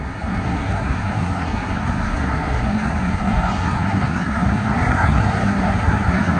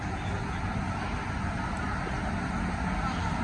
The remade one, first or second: first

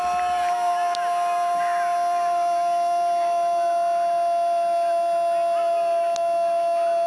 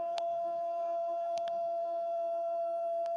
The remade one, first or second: second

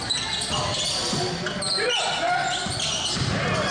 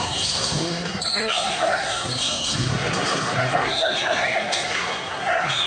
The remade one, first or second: second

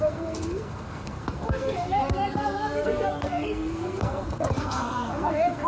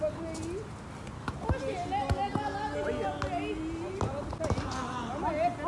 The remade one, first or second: first